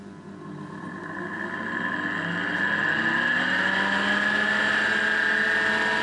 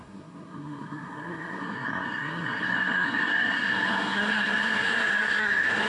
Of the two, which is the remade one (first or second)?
second